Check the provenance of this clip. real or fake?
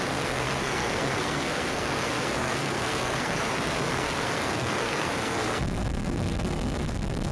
fake